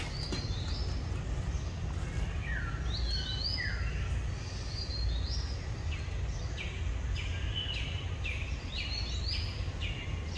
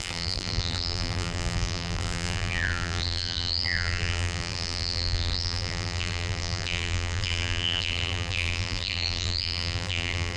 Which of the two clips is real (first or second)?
first